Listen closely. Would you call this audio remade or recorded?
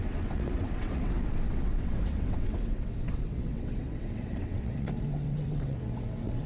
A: remade